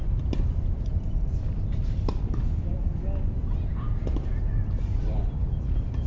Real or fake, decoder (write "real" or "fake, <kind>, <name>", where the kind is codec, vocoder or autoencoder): real